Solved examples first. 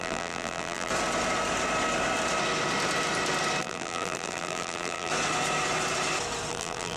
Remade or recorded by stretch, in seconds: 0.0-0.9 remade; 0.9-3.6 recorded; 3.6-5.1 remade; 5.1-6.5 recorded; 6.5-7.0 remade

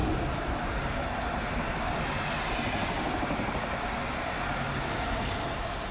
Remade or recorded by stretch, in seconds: 0.0-5.9 recorded

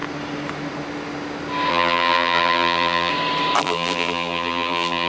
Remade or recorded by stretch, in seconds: 0.0-1.7 recorded; 1.7-3.1 remade; 3.1-3.6 recorded; 3.6-5.1 remade

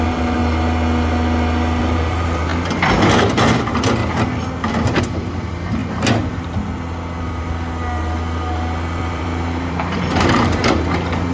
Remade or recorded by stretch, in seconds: 0.0-0.4 remade; 0.4-1.8 recorded; 1.8-2.5 remade; 2.5-3.6 recorded; 3.6-4.0 remade; 4.0-5.0 recorded; 5.0-5.8 remade; 5.8-9.0 recorded; 9.0-11.3 remade

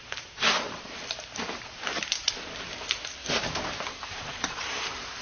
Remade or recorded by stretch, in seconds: 0.0-1.9 remade; 1.9-2.7 recorded; 2.7-3.2 remade; 3.2-4.1 recorded; 4.1-5.2 remade

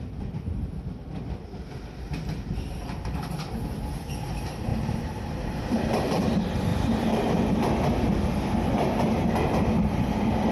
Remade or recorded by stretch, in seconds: 0.0-4.7 recorded; 4.7-5.9 remade; 5.9-6.7 recorded; 6.7-7.3 remade; 7.3-10.5 recorded

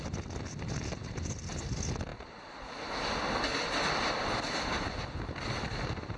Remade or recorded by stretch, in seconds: 0.0-6.2 recorded